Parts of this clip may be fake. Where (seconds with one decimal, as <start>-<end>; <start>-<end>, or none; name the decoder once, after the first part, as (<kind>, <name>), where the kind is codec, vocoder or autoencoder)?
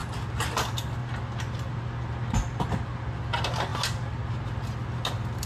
1.0-1.8 (vocoder, BigVGAN v2)